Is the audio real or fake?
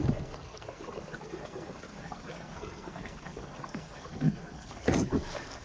fake